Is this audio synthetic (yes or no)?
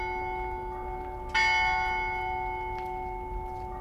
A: no